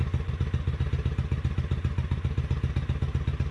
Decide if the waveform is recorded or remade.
recorded